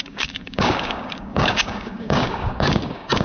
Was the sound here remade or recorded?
remade